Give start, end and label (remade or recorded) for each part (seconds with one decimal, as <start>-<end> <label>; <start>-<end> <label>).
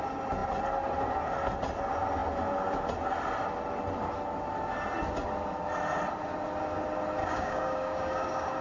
0.0-7.2 recorded; 7.2-8.6 remade